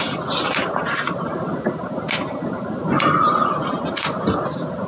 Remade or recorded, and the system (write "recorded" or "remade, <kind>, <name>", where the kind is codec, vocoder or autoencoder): recorded